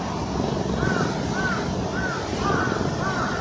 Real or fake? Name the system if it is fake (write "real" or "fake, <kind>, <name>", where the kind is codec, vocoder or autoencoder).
real